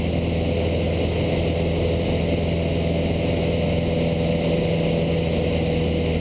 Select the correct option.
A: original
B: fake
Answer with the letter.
A